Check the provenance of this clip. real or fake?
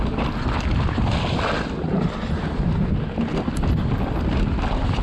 real